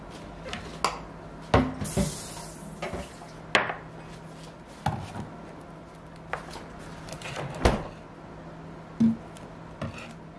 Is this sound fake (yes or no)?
no